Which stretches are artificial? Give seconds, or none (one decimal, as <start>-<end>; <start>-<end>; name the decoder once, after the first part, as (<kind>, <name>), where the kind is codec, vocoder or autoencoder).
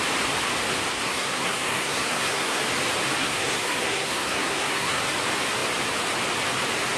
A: 0.9-2.6 (codec, SNAC); 3.2-5.0